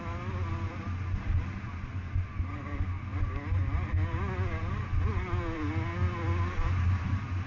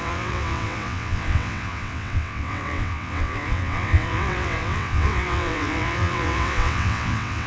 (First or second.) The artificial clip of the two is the second